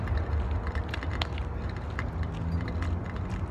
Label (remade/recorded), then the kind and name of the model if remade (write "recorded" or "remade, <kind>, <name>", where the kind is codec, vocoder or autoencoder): recorded